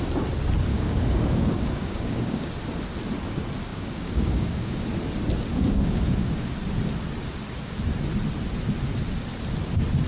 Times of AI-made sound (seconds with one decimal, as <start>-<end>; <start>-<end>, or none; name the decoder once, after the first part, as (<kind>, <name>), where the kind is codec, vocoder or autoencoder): 0.7-2.5 (codec, DAC); 3.7-4.8; 5.5-6.5